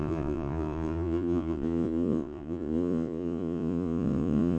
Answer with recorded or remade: remade